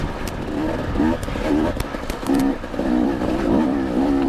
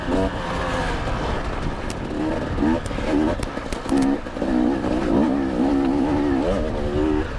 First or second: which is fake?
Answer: first